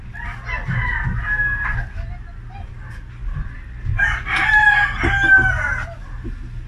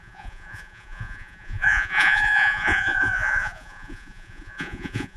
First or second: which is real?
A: first